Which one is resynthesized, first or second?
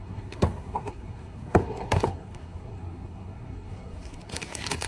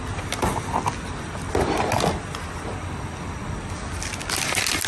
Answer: first